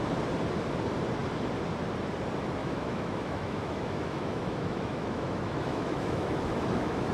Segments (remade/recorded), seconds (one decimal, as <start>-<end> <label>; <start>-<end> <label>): 0.0-2.6 recorded; 2.6-7.1 remade